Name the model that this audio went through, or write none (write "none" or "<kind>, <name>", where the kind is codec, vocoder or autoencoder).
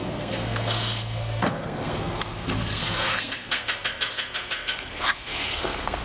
codec, SNAC